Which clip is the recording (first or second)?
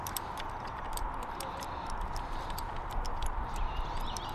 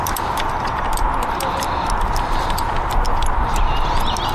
second